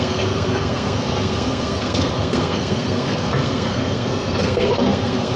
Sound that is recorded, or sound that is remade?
remade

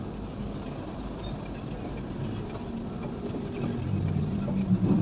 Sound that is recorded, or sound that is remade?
recorded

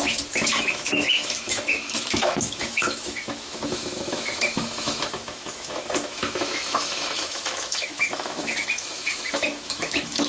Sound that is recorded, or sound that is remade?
remade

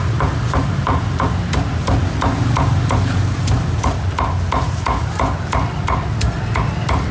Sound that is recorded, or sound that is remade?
recorded